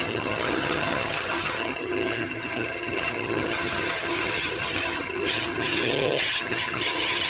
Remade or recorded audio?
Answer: remade